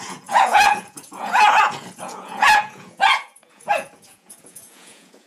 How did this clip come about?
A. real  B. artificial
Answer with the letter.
B